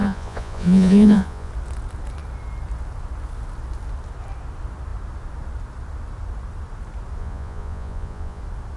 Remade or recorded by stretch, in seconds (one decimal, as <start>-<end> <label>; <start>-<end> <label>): 0.0-1.5 remade; 1.5-7.2 recorded; 7.2-8.4 remade; 8.4-8.8 recorded